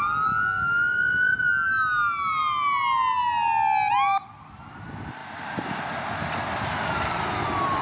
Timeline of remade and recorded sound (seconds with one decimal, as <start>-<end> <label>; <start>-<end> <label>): 0.0-0.4 recorded; 0.4-1.3 remade; 1.3-7.8 recorded